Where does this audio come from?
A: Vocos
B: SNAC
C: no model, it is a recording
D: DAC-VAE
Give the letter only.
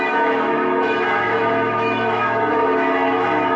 D